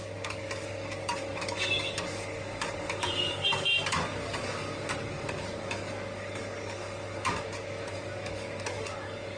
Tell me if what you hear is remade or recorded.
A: remade